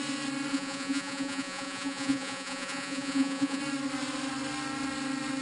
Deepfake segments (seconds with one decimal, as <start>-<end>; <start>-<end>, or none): 0.5-3.6